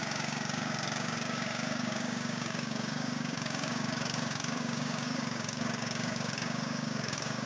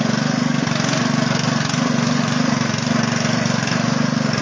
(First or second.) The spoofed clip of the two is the first